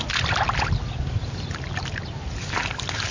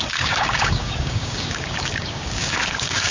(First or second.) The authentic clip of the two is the first